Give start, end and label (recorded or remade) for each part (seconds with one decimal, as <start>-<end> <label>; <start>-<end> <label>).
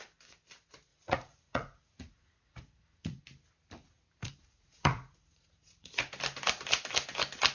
0.0-0.9 recorded; 0.9-3.2 remade; 3.2-4.2 recorded; 4.2-6.1 remade; 6.1-7.5 recorded